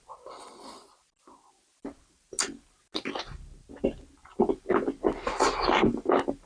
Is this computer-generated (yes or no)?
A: no